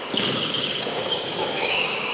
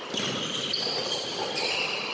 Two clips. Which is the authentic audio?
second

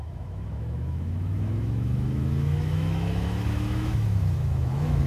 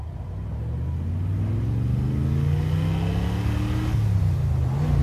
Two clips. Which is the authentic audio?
second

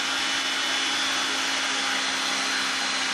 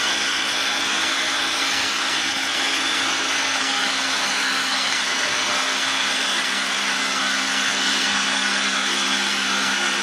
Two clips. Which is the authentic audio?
first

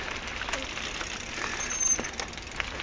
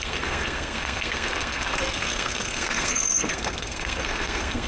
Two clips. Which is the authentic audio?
first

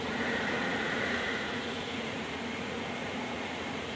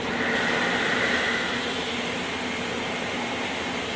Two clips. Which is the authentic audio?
second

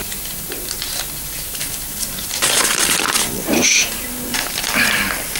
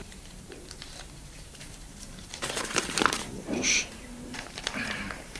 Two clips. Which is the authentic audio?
first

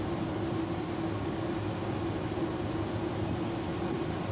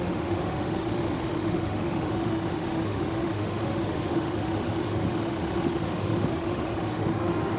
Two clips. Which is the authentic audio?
first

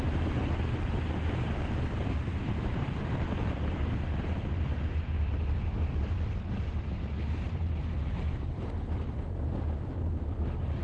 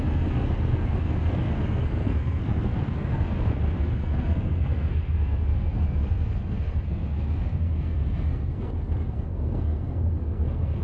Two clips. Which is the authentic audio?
first